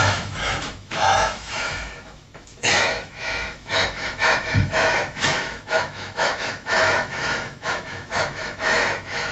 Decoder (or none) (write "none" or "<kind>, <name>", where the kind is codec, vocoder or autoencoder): autoencoder, DAC-VAE